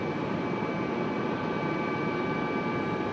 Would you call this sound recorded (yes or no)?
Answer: yes